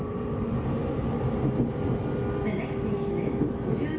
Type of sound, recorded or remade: recorded